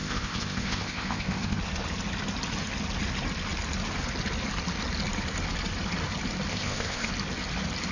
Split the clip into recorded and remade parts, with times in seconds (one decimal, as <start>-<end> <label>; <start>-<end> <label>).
0.0-1.6 remade; 1.6-6.5 recorded; 6.5-7.1 remade; 7.1-7.9 recorded